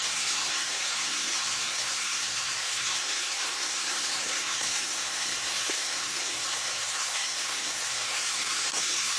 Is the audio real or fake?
fake